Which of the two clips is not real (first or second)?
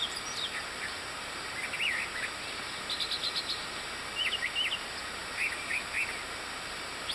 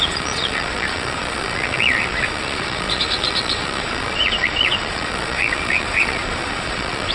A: second